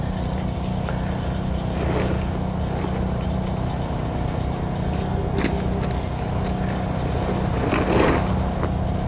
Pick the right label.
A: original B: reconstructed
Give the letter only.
A